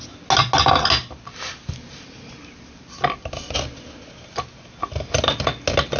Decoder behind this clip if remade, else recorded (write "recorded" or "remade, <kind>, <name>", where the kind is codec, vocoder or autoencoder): recorded